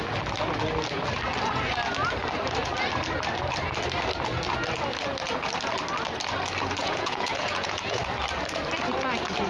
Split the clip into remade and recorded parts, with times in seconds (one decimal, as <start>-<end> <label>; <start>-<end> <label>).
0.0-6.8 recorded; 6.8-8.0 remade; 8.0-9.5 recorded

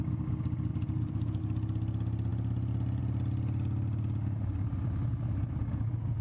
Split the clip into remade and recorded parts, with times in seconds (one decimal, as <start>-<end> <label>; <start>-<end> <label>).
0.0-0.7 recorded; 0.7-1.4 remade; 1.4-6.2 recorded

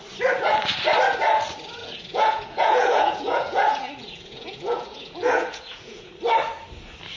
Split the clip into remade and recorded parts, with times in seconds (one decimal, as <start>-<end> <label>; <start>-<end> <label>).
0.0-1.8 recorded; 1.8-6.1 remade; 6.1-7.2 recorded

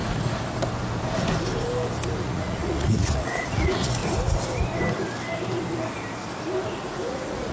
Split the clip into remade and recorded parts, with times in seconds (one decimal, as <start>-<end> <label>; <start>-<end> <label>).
0.0-2.2 recorded; 2.2-4.0 remade; 4.0-6.7 recorded; 6.7-7.5 remade